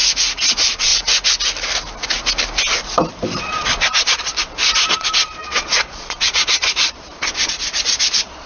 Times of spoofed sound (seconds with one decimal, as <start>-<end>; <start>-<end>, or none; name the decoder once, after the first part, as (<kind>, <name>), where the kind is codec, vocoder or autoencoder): 0.5-0.9 (vocoder, Vocos); 3.4-4.3; 4.9-8.5